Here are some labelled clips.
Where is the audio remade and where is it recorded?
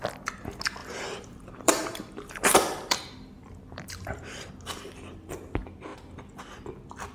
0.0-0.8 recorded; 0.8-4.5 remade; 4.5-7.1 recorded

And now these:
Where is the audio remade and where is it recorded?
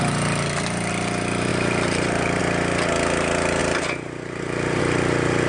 0.0-1.5 recorded; 1.5-2.4 remade; 2.4-3.6 recorded; 3.6-4.8 remade; 4.8-5.5 recorded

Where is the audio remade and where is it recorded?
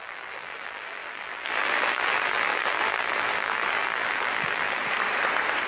0.0-4.8 remade; 4.8-5.7 recorded